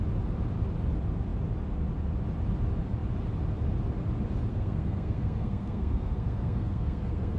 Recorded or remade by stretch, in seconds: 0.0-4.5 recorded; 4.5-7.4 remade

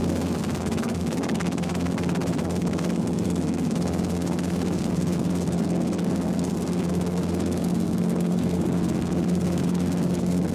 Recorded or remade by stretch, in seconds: 0.0-10.5 remade

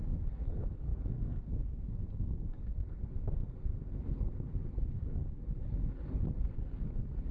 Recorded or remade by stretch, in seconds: 0.0-5.2 remade; 5.2-6.1 recorded; 6.1-7.3 remade